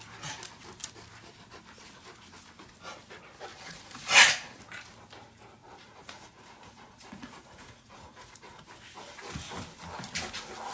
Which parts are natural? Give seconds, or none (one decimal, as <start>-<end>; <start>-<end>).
0.0-3.5; 4.6-5.6; 8.6-10.7